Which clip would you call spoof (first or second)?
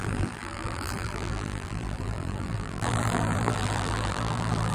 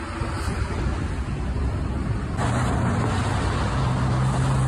first